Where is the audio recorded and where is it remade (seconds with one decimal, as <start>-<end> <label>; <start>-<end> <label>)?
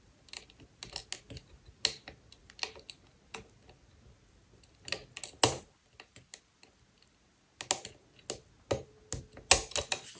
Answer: 0.0-10.2 recorded